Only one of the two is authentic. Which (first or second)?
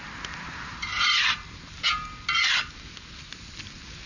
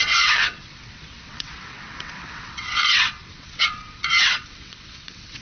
first